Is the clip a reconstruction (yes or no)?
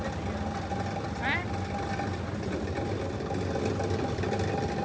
no